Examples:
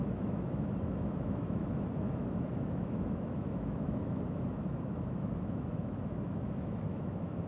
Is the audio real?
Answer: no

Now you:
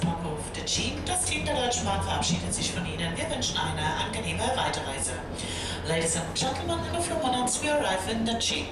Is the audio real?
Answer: yes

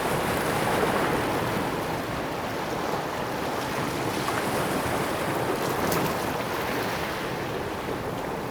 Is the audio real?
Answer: yes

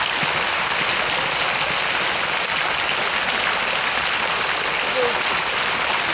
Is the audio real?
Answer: yes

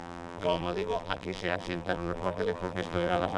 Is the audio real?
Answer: no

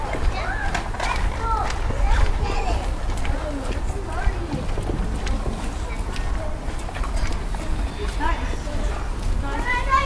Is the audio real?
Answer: yes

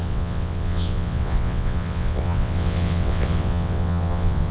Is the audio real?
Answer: no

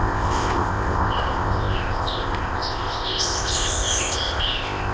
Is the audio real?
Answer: no